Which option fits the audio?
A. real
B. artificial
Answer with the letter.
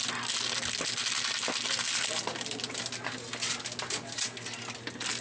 A